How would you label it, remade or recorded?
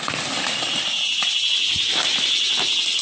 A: recorded